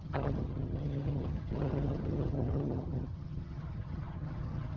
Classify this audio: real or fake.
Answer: fake